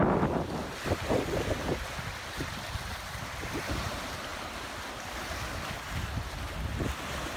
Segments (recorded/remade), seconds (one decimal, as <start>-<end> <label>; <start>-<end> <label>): 0.0-7.4 recorded